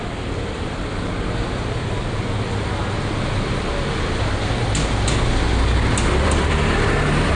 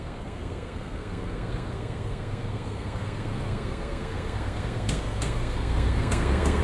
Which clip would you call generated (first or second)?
second